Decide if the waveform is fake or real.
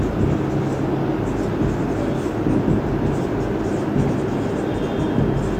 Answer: real